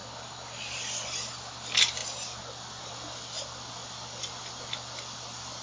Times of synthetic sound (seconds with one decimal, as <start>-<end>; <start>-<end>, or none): none